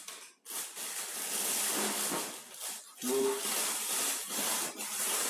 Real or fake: real